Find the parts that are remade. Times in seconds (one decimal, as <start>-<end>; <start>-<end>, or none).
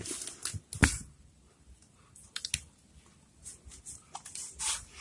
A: none